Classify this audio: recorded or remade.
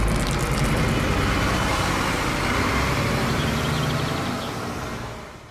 recorded